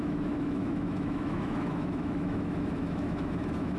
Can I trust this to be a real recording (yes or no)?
no